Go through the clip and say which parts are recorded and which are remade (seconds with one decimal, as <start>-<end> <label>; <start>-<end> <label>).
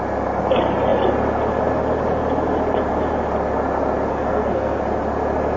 0.0-4.1 recorded; 4.1-4.8 remade; 4.8-5.6 recorded